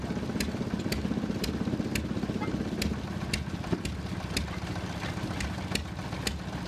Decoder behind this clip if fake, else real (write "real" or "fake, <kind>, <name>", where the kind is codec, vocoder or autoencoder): real